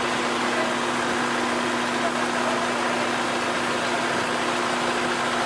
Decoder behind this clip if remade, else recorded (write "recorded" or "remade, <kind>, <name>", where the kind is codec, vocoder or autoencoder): recorded